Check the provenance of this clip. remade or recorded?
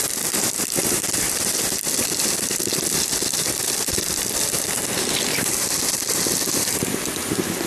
remade